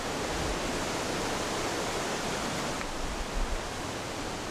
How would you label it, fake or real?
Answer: real